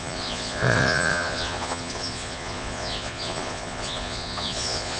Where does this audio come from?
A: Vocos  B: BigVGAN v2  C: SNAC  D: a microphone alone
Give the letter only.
A